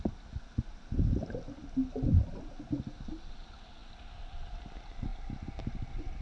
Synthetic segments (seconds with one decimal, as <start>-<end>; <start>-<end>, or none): none